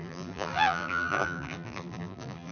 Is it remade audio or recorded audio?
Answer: remade